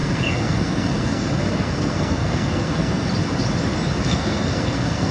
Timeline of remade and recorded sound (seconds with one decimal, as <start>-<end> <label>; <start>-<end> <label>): 0.0-3.1 remade; 3.1-4.1 recorded; 4.1-5.1 remade